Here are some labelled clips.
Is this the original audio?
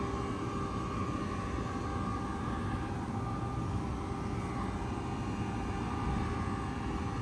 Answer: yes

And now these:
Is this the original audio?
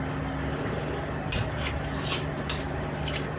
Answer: yes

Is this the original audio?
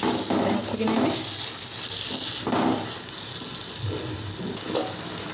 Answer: yes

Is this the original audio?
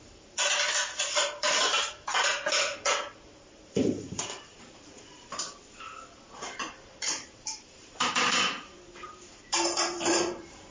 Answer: no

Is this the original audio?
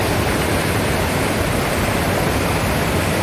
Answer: no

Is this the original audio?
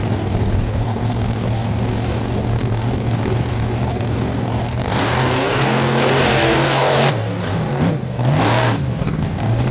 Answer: no